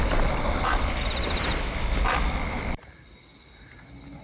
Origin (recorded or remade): recorded